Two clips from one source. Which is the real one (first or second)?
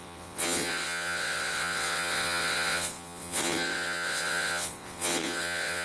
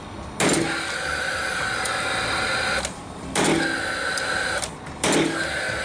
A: second